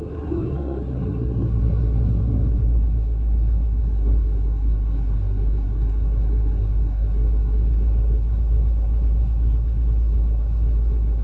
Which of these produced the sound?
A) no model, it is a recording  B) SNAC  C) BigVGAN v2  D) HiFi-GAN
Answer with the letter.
B